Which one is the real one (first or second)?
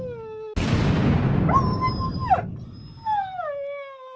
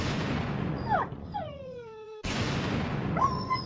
first